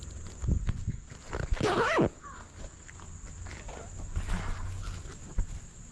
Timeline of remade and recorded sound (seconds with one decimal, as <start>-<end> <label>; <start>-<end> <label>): 0.0-0.4 recorded; 0.4-1.1 remade; 1.1-2.1 recorded; 2.1-2.9 remade; 2.9-5.9 recorded